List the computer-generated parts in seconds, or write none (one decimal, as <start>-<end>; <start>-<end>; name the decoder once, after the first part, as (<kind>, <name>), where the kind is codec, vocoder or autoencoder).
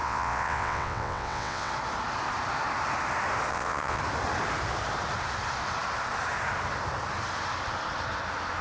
0.0-1.7 (vocoder, WaveNeXt); 3.5-4.0